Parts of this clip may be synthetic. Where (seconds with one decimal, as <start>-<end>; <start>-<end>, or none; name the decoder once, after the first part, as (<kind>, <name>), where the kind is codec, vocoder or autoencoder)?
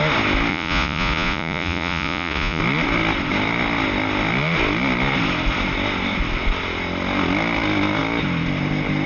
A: 0.5-2.6 (vocoder, Vocos)